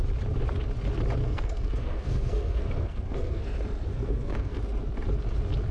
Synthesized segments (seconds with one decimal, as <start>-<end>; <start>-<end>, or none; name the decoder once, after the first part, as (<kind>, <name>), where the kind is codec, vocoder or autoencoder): 1.2-3.4 (codec, SNAC); 3.9-4.6